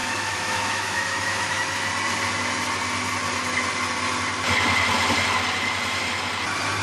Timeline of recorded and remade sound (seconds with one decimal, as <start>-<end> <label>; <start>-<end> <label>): 0.0-1.8 remade; 1.8-6.8 recorded